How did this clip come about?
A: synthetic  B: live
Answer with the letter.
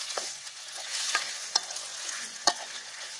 A